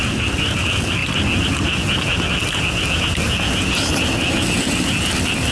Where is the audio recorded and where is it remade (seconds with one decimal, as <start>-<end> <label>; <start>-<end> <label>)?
0.0-5.5 recorded